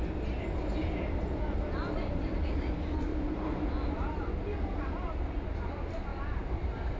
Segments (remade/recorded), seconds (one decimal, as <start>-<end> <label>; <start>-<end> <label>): 0.0-3.1 recorded; 3.1-3.7 remade; 3.7-6.1 recorded; 6.1-7.0 remade